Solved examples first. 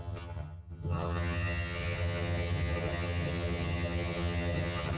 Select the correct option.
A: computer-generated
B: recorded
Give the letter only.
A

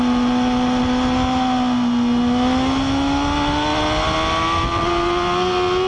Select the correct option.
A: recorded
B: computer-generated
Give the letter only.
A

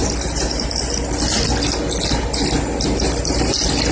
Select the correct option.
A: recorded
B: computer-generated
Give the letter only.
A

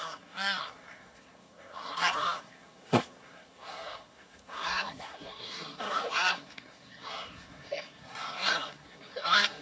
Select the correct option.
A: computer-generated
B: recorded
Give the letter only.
A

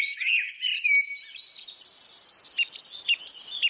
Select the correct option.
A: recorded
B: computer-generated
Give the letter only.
A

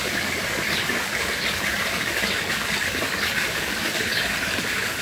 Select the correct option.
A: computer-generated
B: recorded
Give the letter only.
A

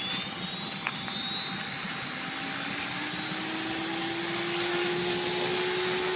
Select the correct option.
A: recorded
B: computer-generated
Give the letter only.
A